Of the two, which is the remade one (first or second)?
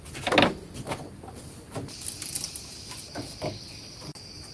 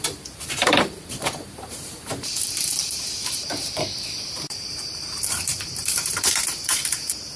second